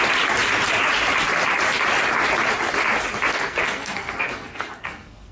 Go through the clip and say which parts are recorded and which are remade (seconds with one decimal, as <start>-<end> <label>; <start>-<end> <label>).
0.0-3.3 recorded; 3.3-5.3 remade